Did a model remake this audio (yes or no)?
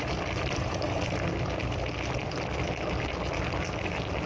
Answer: no